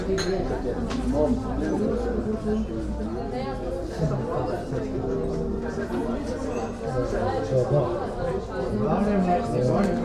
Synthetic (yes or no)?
no